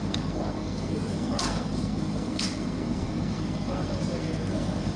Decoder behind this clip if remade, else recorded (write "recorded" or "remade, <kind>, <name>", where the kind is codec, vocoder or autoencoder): remade, codec, SNAC